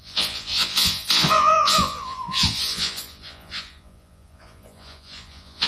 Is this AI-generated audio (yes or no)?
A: yes